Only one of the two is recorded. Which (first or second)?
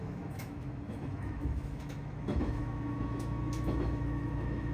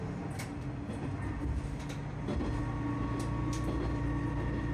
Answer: second